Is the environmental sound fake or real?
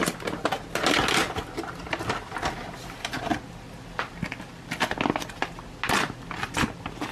real